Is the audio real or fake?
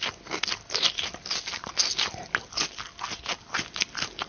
real